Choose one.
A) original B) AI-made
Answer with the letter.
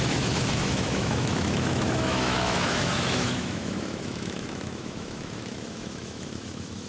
B